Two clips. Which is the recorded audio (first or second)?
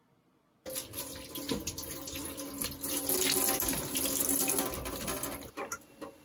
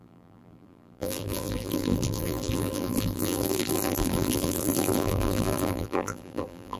first